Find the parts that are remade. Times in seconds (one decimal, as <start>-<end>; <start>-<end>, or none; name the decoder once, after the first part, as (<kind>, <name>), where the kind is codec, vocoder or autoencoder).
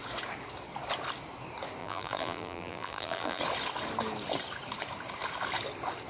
1.8-3.4 (vocoder, BigVGAN v2)